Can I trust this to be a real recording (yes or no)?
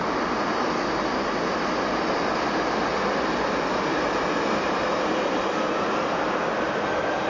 yes